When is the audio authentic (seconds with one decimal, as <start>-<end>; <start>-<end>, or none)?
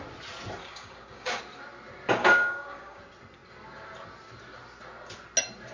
0.0-0.6; 1.4-2.2; 3.0-5.7